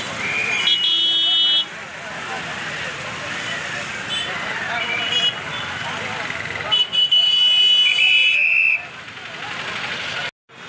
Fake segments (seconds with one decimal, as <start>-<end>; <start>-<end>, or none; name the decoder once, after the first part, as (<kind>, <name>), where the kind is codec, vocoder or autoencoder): none